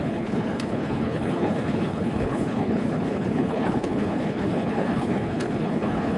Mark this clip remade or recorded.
remade